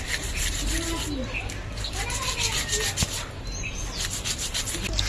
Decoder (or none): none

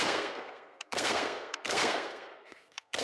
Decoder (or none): codec, SNAC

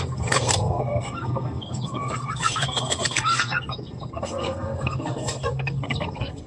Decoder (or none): codec, SNAC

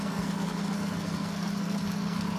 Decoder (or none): codec, SNAC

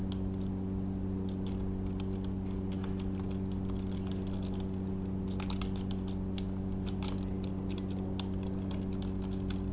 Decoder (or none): none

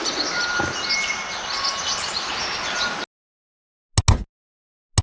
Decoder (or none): none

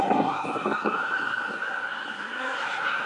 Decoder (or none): codec, SNAC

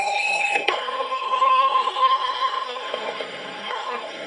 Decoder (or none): codec, SNAC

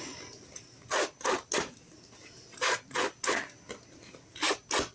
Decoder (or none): none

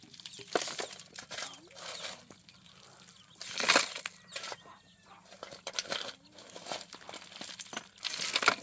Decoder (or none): none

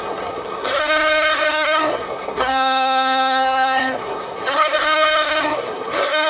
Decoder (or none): codec, SNAC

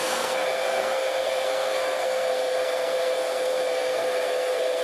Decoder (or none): codec, SNAC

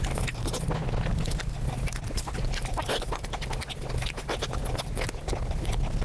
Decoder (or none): none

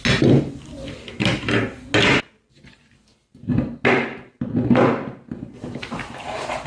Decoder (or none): none